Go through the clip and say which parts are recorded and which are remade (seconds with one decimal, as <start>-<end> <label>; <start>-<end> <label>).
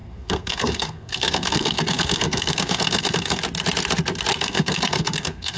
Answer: 0.0-3.4 remade; 3.4-4.3 recorded; 4.3-5.6 remade